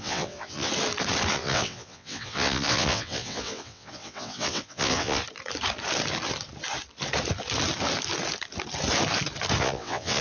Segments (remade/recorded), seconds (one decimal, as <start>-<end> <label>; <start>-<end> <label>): 0.0-0.7 remade; 0.7-1.3 recorded; 1.3-5.2 remade; 5.2-9.6 recorded; 9.6-10.2 remade